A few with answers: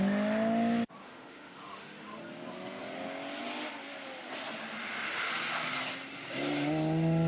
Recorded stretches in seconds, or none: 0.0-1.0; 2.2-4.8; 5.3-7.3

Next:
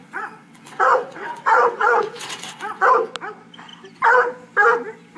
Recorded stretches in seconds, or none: 2.9-5.2